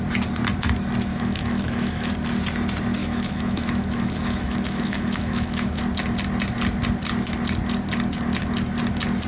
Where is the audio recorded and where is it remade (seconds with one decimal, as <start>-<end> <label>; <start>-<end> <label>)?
0.0-1.1 recorded; 1.1-2.1 remade; 2.1-3.0 recorded; 3.0-5.8 remade; 5.8-9.3 recorded